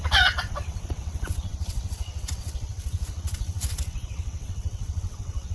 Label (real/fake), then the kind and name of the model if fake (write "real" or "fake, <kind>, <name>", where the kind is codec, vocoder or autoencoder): fake, vocoder, WaveNeXt